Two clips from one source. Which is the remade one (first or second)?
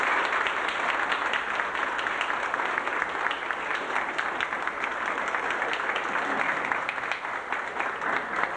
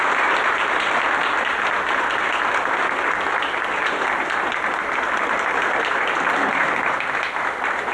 second